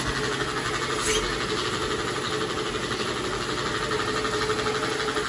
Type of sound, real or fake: real